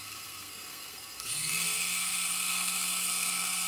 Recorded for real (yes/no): no